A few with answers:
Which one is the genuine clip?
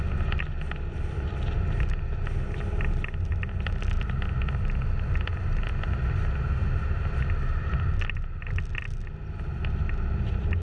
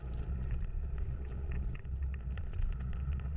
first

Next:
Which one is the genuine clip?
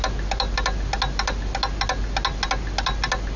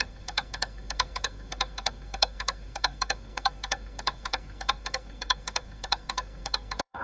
first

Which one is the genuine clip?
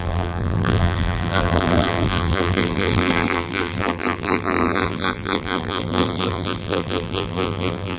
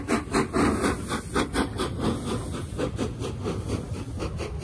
second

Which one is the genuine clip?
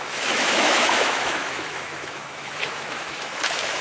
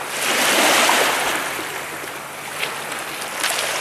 second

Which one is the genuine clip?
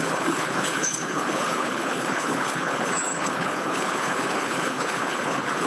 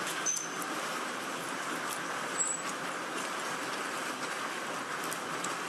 second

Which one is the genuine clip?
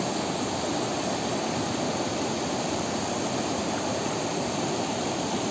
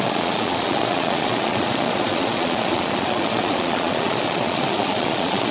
first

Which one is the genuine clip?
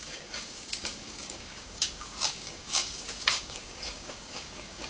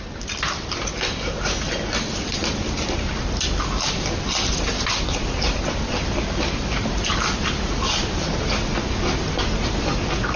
second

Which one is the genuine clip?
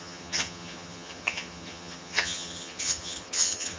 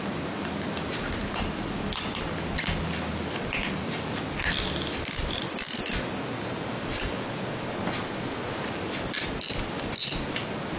second